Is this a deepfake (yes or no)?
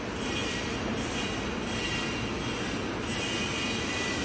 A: no